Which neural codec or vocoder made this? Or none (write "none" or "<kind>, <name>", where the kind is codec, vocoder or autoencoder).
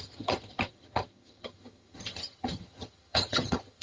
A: vocoder, HiFi-GAN